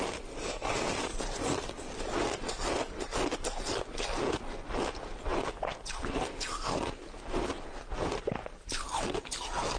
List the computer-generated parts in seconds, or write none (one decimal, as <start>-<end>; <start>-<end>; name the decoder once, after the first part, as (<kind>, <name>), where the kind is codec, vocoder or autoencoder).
none